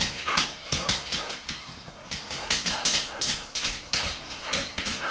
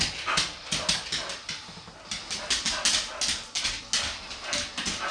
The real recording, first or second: second